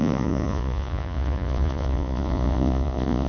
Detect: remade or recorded remade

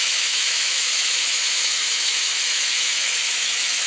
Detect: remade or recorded remade